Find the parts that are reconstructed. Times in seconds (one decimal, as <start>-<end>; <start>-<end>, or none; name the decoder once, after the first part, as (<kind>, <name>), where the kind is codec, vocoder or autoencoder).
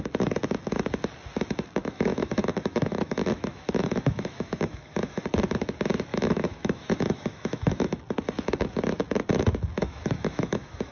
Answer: 1.8-5.2 (autoencoder, DAC-VAE); 6.1-8.0; 9.8-10.9